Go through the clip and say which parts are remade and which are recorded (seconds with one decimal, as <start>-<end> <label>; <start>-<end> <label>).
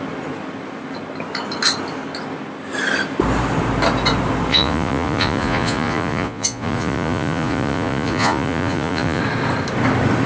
0.0-4.5 recorded; 4.5-9.2 remade; 9.2-10.3 recorded